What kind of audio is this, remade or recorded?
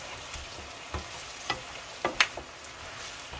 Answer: recorded